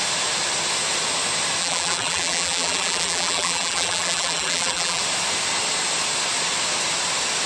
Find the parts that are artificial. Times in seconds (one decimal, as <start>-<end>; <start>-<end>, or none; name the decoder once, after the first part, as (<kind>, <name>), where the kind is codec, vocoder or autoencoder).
1.6-5.0 (vocoder, BigVGAN v2)